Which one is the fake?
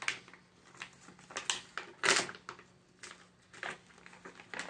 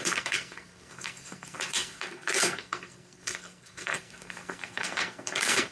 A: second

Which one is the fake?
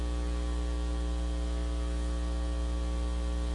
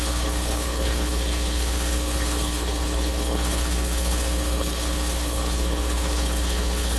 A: second